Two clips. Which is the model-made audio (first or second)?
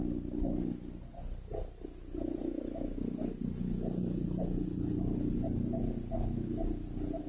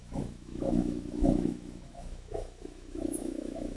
second